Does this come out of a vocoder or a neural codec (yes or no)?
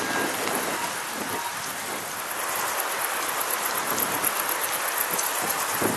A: no